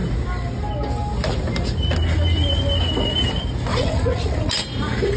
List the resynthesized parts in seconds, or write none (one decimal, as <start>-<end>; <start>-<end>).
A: 3.7-4.5